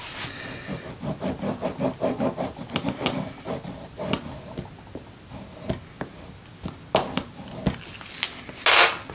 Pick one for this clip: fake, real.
real